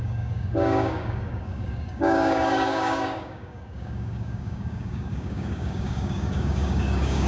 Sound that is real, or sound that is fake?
fake